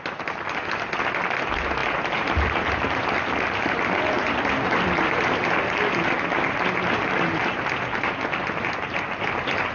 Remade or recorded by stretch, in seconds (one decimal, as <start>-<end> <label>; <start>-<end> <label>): 0.0-9.7 recorded